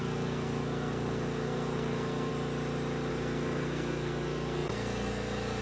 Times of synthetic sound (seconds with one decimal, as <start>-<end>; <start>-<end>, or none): 0.0-2.3; 3.1-5.6